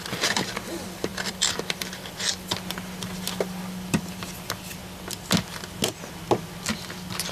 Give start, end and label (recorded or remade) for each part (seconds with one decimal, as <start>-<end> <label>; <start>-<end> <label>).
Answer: 0.0-4.8 remade; 4.8-7.3 recorded